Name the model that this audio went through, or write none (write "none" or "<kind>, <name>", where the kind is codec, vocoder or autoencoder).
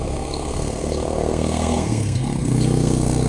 codec, SNAC